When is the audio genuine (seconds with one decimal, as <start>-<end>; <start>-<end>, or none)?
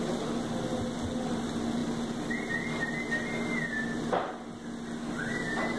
0.0-5.8